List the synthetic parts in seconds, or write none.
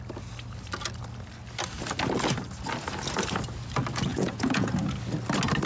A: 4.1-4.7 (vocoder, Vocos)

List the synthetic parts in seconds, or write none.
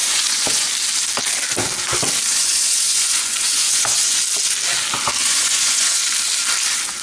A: 0.0-0.7 (vocoder, Vocos); 2.3-4.2; 5.2-6.0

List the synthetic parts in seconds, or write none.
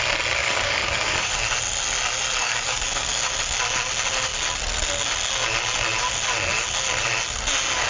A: 0.4-1.3 (codec, DAC); 2.4-3.3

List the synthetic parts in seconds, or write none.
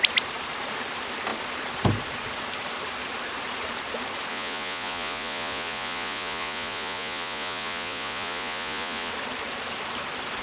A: 4.3-9.1 (vocoder, Vocos)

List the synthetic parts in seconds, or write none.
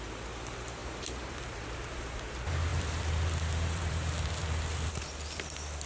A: 0.8-2.2 (vocoder, BigVGAN v2); 2.7-4.1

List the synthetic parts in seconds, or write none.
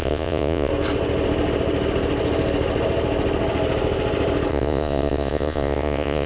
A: 0.0-0.7 (vocoder, Vocos); 4.5-6.3